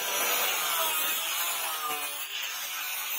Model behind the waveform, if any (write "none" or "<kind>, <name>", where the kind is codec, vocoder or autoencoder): none